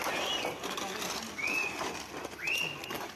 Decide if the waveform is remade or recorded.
recorded